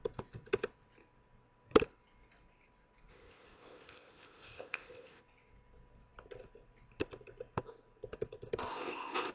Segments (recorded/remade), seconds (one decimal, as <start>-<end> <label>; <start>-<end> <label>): 0.0-3.1 recorded; 3.1-5.2 remade; 5.2-8.7 recorded; 8.7-9.3 remade